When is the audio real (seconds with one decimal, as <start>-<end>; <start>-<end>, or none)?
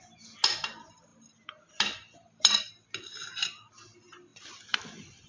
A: 0.0-1.1; 2.7-4.3